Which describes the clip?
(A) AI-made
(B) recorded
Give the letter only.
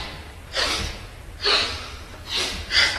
B